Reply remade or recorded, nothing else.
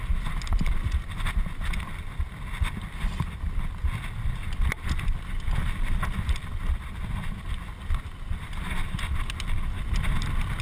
recorded